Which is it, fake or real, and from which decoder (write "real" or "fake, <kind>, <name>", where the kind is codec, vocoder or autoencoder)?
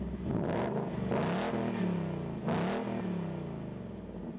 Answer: real